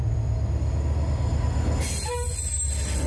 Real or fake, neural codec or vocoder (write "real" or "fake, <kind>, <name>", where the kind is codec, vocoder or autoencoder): real